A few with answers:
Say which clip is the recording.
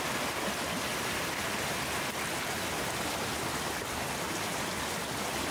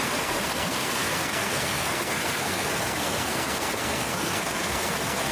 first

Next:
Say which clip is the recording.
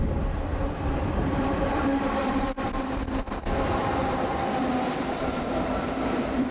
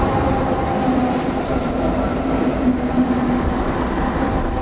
second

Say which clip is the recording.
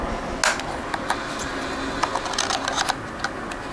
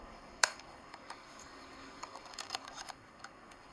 first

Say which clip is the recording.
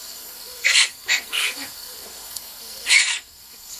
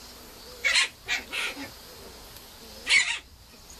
second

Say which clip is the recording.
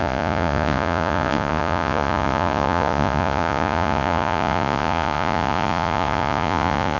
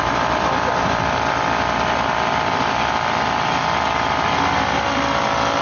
second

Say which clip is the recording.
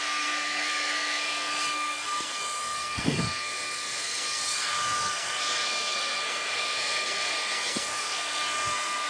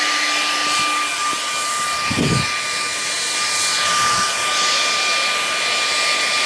second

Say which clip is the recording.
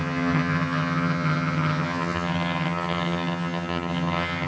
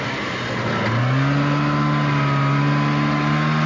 second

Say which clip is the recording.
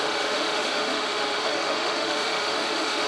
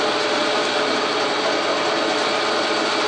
second